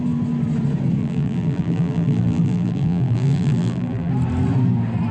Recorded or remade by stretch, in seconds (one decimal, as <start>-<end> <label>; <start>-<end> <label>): 0.0-1.0 recorded; 1.0-4.1 remade; 4.1-5.1 recorded

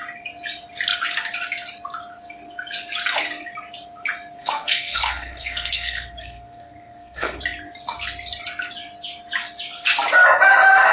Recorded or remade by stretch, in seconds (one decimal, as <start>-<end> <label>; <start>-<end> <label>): 0.0-4.4 recorded; 4.4-7.4 remade; 7.4-10.9 recorded

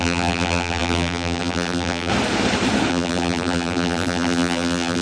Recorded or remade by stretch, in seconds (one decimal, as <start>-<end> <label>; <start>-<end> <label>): 0.0-2.1 remade; 2.1-2.9 recorded; 2.9-5.0 remade

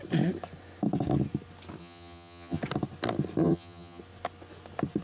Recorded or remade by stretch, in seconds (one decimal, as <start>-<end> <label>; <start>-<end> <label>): 0.0-1.8 recorded; 1.8-2.6 remade; 2.6-3.4 recorded; 3.4-4.0 remade; 4.0-5.0 recorded